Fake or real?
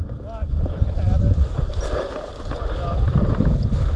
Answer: real